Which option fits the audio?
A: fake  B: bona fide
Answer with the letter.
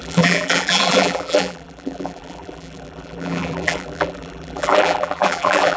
A